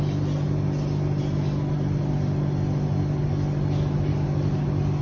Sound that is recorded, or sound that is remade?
recorded